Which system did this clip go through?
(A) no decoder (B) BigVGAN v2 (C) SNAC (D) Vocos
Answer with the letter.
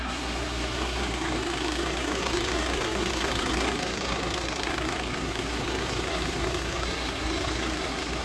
C